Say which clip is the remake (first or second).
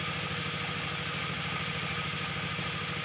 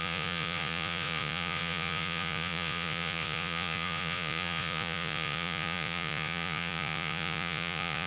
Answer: second